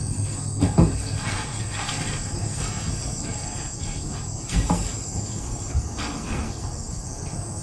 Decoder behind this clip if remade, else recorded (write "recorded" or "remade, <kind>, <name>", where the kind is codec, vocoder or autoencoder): remade, codec, SNAC